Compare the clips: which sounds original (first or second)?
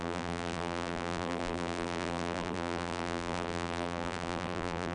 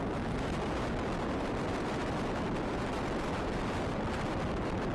second